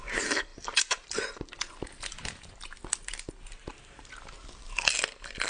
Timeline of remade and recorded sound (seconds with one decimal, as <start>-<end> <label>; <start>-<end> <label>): 0.0-5.5 recorded

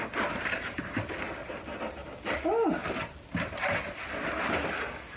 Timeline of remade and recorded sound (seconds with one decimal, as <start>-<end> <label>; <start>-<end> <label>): 0.0-5.2 recorded

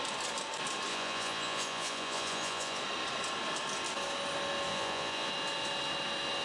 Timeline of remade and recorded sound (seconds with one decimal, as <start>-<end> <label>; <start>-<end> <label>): 0.0-0.9 recorded; 0.9-2.8 remade; 2.8-4.7 recorded; 4.7-5.3 remade; 5.3-6.4 recorded

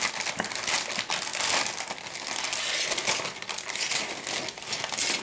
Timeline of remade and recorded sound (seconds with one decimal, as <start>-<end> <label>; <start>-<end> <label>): 0.0-5.2 recorded

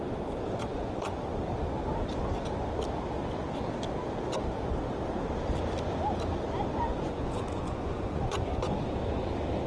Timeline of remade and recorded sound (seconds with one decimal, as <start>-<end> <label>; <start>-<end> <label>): 0.0-0.7 recorded; 0.7-1.3 remade; 1.3-6.9 recorded; 6.9-8.8 remade; 8.8-9.7 recorded

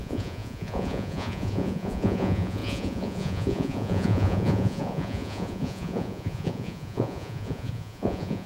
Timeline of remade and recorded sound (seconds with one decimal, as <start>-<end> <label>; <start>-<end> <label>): 0.0-8.5 remade

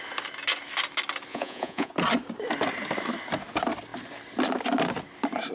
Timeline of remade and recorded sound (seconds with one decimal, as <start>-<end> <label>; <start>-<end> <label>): 0.0-1.3 recorded; 1.3-1.9 remade; 1.9-5.5 recorded

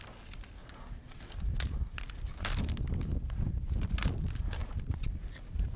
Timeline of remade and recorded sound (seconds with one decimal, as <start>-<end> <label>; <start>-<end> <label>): 0.0-0.6 recorded; 0.6-1.2 remade; 1.2-4.6 recorded; 4.6-5.2 remade; 5.2-5.8 recorded